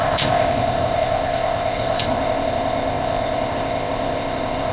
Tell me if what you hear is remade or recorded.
remade